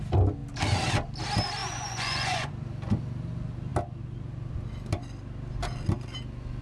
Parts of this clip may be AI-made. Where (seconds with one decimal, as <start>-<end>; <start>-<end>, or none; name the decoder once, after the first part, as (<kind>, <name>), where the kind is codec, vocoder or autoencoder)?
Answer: 1.6-2.5 (vocoder, Vocos)